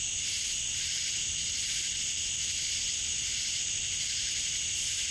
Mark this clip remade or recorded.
recorded